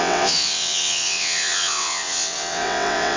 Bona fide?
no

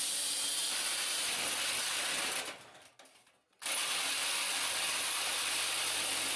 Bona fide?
yes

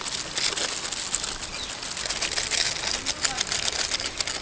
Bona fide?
yes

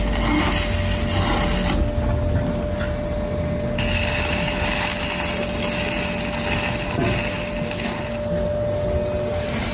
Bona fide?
yes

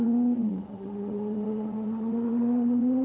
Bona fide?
no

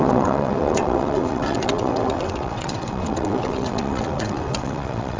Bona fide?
no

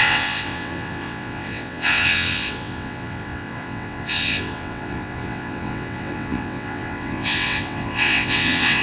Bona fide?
no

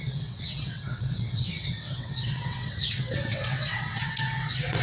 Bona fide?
no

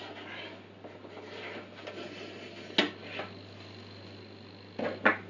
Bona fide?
yes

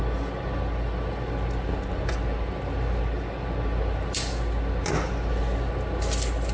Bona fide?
yes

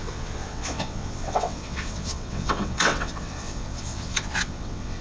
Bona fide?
no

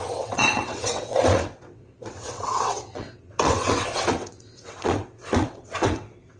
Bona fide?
no